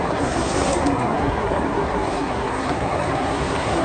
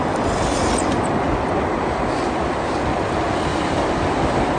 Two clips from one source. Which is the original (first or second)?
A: second